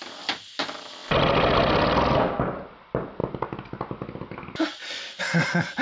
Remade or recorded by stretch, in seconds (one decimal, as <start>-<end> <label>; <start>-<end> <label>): 0.0-5.8 recorded